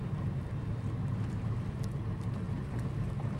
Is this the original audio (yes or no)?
yes